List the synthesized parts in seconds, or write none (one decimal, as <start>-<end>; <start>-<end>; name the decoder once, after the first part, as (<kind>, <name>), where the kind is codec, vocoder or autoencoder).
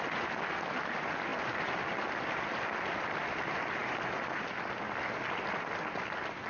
none